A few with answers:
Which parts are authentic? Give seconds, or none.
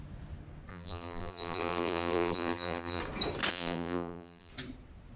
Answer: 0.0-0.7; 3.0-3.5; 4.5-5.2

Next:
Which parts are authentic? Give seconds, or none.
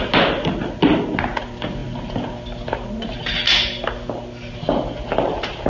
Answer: 0.0-5.7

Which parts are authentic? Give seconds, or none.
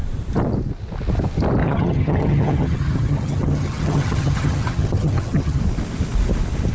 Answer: 0.0-1.6; 5.6-6.7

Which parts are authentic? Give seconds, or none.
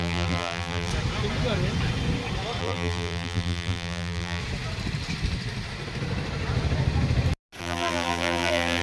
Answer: 0.9-2.6; 4.4-7.6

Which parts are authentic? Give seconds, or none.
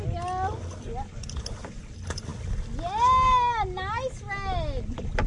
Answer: 0.0-5.3